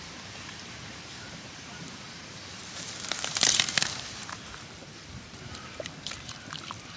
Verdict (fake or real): fake